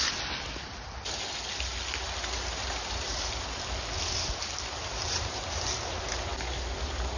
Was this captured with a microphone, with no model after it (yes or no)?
yes